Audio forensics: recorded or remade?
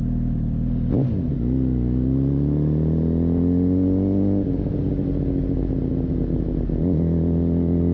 recorded